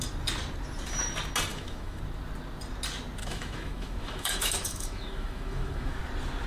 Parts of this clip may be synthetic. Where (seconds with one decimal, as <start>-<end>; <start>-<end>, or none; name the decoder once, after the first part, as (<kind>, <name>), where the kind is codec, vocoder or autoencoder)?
1.5-2.0 (autoencoder, DAC-VAE); 3.2-6.0